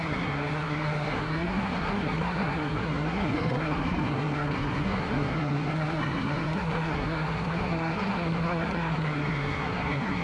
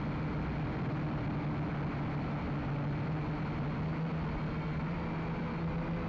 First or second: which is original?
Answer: second